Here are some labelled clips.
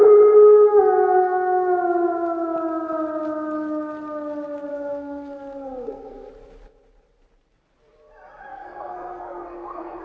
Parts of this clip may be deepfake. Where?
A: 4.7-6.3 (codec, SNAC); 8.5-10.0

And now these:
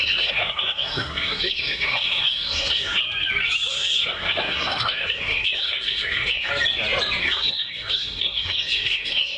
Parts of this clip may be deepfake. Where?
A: 0.0-3.0 (codec, SNAC); 3.7-6.5; 7.2-9.4

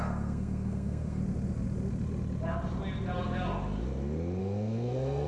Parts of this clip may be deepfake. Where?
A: 0.0-1.2 (codec, SNAC); 4.4-5.3